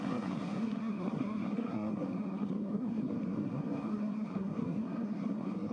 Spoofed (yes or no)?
yes